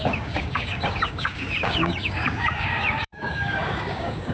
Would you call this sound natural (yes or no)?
no